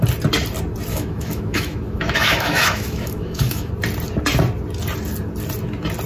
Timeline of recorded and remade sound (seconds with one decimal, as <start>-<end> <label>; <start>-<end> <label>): 0.0-0.9 recorded; 0.9-3.7 remade; 3.7-6.1 recorded